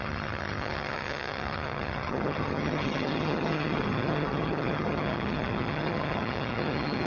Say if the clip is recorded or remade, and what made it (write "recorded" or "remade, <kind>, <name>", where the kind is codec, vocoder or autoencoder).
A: remade, vocoder, HiFi-GAN